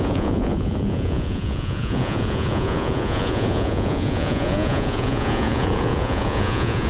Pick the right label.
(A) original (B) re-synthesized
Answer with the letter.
B